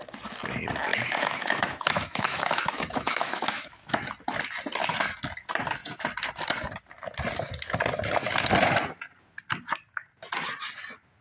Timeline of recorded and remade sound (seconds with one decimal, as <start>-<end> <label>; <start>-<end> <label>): 0.0-0.9 recorded; 0.9-4.1 remade; 4.1-11.2 recorded